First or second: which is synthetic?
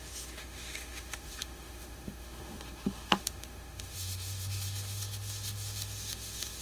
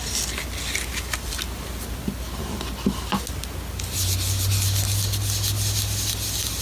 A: first